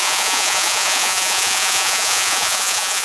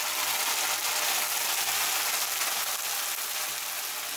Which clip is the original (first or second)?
second